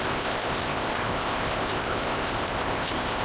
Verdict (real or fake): fake